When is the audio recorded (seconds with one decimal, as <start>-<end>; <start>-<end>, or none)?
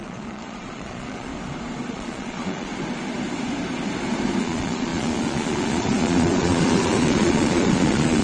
1.3-1.9; 2.7-4.4